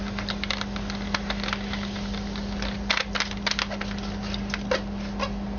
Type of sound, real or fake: real